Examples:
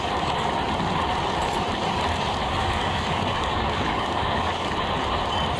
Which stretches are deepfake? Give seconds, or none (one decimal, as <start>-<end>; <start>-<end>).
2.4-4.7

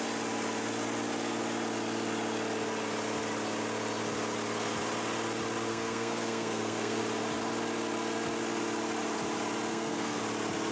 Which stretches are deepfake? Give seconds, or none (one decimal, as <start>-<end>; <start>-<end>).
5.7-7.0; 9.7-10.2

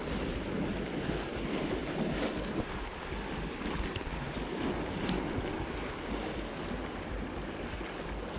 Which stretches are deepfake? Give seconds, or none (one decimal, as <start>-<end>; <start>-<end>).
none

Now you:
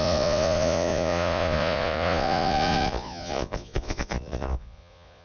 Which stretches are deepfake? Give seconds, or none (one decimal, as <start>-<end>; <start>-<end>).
0.0-5.2

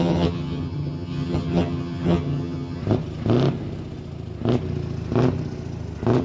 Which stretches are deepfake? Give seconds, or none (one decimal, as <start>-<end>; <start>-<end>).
0.0-2.8

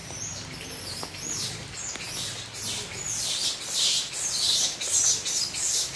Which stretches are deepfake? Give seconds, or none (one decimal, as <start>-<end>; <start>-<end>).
none

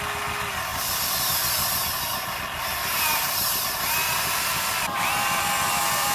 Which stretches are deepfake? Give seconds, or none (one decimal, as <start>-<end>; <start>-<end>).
none